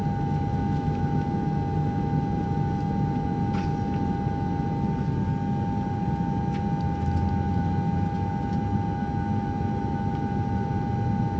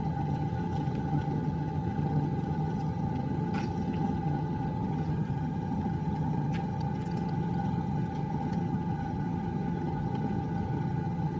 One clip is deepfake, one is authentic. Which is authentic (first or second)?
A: first